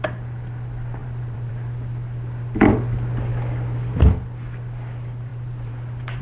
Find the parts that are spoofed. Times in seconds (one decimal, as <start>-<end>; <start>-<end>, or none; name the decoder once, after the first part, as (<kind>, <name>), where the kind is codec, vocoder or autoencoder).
1.0-1.5 (vocoder, BigVGAN v2); 5.3-6.2